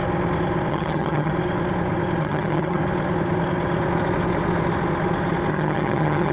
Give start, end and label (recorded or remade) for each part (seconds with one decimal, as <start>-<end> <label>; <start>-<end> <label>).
0.0-0.7 recorded; 0.7-1.3 remade; 1.3-2.2 recorded; 2.2-2.8 remade; 2.8-5.5 recorded; 5.5-6.3 remade